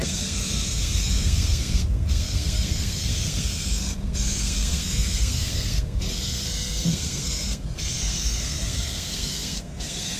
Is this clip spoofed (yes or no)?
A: yes